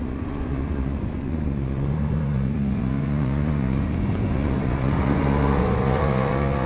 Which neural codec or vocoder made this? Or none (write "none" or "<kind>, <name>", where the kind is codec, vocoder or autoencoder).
vocoder, Vocos